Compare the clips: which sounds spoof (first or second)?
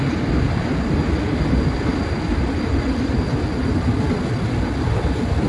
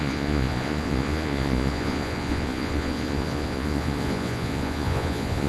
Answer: second